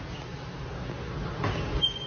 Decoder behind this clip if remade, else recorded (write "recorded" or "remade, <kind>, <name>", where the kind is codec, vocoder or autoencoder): recorded